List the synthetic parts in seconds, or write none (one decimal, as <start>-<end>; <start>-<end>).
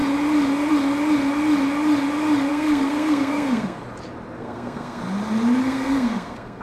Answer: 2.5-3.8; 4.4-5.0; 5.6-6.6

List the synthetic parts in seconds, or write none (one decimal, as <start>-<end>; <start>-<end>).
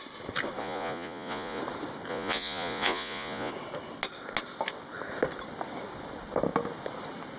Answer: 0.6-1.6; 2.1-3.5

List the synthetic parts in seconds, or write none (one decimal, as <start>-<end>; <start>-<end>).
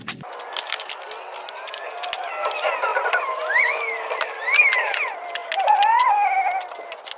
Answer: 2.9-3.6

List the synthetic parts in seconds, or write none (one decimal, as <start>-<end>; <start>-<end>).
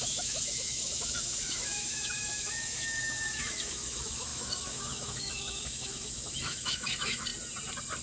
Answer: 0.0-7.3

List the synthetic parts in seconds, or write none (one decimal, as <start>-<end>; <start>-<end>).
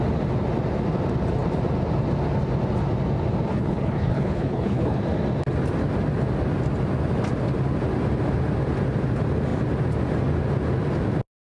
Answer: 3.5-5.0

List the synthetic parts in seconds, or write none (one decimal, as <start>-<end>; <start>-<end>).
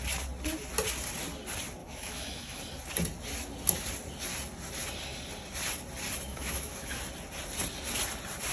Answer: 1.8-2.6; 6.3-7.0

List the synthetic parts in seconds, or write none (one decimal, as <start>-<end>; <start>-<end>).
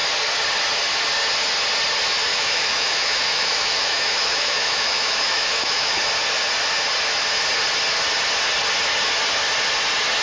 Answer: 2.3-6.0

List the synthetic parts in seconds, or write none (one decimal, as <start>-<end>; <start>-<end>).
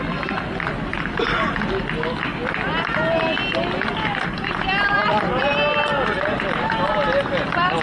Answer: 0.0-0.9; 4.4-5.5; 7.3-7.8